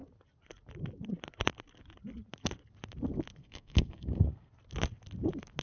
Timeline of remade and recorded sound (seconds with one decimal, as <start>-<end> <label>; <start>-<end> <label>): 0.0-3.4 recorded; 3.4-4.5 remade; 4.5-5.6 recorded